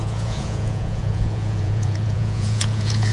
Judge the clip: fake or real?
fake